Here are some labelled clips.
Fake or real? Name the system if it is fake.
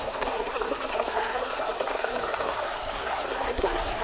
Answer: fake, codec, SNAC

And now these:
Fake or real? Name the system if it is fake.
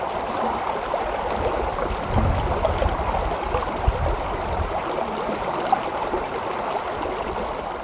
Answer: real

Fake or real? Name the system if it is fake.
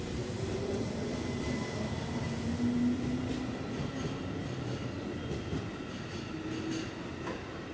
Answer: real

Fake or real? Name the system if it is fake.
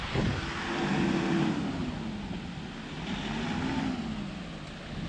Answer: real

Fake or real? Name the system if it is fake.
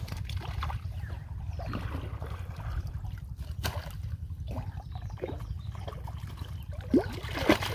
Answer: real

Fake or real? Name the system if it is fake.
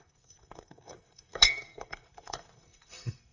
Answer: fake, codec, SNAC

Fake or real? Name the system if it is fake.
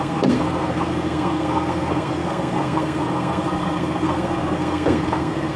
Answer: fake, codec, SNAC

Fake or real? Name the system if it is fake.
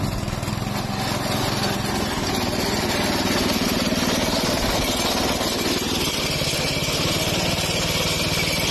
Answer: real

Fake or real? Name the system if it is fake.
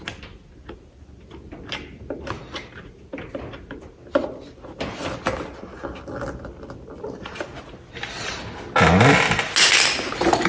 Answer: real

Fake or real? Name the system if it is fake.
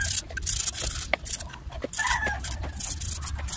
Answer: real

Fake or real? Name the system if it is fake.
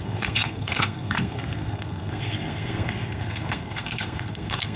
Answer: fake, codec, SNAC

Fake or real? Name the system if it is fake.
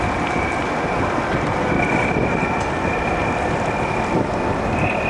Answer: real